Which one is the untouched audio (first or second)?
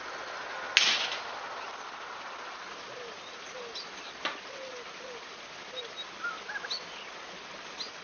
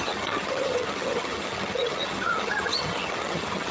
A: first